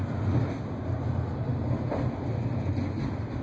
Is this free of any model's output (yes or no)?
yes